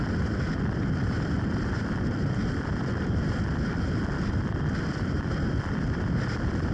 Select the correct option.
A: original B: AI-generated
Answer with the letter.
A